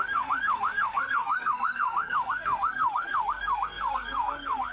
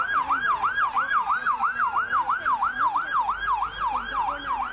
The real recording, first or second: second